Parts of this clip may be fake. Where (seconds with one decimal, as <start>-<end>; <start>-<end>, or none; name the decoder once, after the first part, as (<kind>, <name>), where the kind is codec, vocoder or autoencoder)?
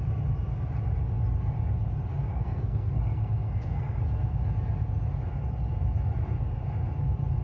2.3-4.0 (codec, SNAC)